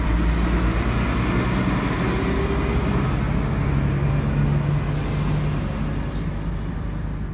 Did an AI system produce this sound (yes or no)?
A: no